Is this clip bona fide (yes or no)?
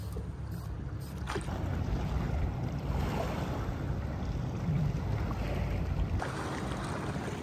yes